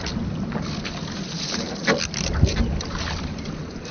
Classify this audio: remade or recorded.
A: recorded